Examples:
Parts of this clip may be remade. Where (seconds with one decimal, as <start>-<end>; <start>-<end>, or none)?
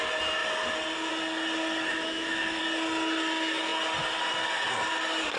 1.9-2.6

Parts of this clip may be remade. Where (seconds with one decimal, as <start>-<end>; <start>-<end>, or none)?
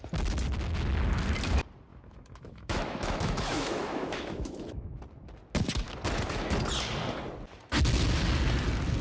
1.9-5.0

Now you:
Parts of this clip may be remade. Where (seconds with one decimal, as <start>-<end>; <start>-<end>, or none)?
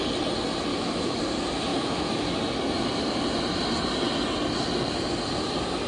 0.7-1.2; 1.7-2.4